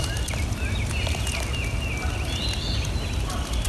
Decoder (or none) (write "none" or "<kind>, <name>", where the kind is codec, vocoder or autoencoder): none